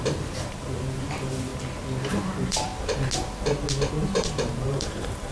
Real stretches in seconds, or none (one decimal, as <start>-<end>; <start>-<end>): 1.5-2.1; 2.7-3.9